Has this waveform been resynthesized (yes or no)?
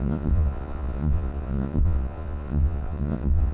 yes